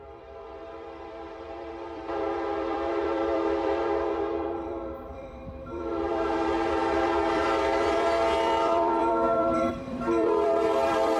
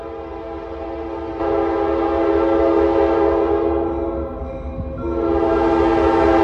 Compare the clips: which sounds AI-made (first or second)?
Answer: first